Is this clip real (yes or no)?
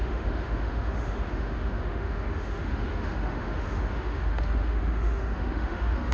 no